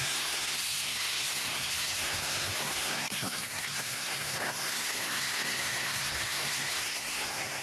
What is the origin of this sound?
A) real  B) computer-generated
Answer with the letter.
B